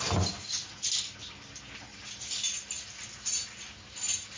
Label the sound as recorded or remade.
recorded